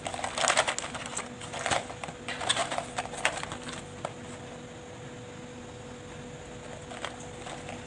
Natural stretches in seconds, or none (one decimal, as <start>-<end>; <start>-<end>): 0.0-7.9

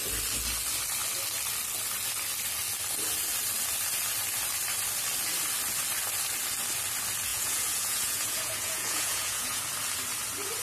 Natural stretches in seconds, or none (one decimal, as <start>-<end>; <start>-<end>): 0.0-7.3; 9.6-10.6

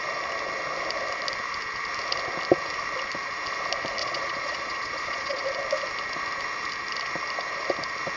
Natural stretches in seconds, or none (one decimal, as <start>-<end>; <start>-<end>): 0.0-4.0; 5.4-8.2

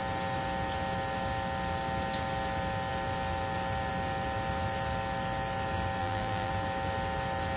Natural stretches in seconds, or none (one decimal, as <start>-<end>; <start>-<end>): 0.0-6.0; 6.5-7.6